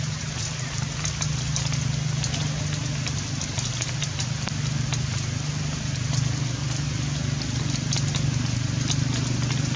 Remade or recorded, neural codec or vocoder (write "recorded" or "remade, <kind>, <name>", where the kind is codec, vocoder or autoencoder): recorded